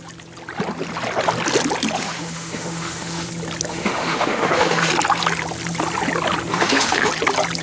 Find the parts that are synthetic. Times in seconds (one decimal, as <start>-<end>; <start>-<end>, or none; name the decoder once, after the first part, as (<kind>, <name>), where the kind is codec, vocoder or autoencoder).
2.0-3.3 (autoencoder, DAC-VAE); 3.7-4.9; 6.5-7.1